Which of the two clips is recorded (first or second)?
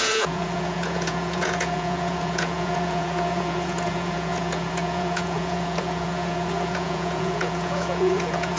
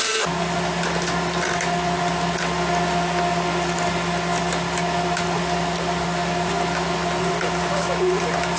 second